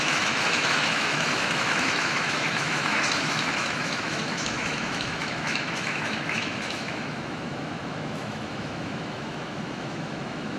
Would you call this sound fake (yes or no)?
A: yes